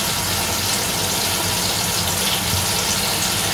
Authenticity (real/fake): real